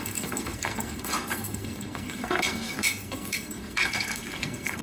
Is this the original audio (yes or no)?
no